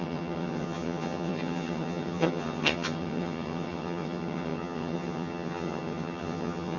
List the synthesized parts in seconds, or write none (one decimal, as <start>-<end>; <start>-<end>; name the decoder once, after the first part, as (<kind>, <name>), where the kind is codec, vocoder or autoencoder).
0.0-6.8 (vocoder, HiFi-GAN)